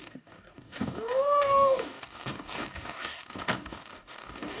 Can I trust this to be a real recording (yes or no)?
no